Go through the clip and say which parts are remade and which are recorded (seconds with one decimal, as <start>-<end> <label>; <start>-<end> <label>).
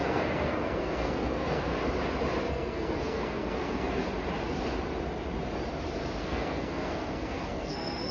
0.0-1.7 remade; 1.7-2.5 recorded; 2.5-4.0 remade; 4.0-6.2 recorded; 6.2-8.1 remade